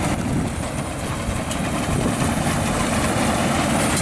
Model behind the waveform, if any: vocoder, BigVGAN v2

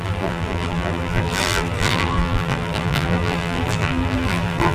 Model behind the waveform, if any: vocoder, BigVGAN v2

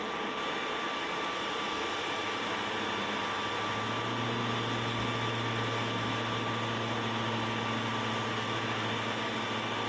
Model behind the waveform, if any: none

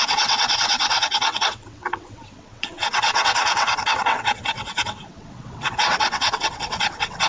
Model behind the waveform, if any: vocoder, WaveNeXt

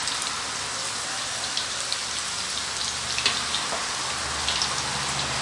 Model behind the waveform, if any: none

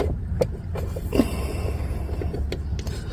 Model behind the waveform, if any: none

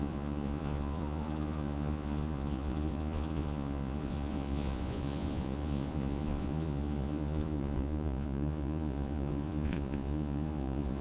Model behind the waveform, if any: vocoder, Vocos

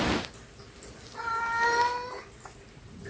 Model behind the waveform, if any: none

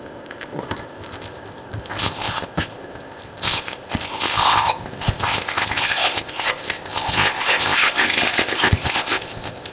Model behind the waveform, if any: codec, ZipCodec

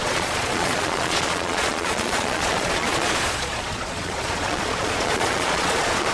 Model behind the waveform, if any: vocoder, Vocos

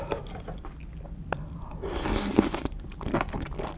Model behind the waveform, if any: none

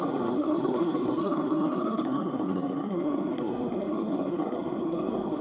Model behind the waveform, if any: codec, SNAC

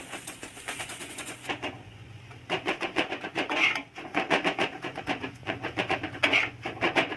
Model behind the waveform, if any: vocoder, Vocos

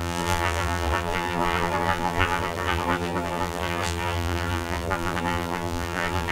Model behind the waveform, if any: vocoder, BigVGAN v2